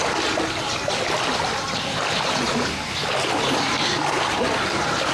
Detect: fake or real real